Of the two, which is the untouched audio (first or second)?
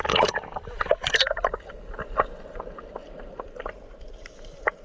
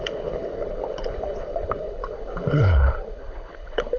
first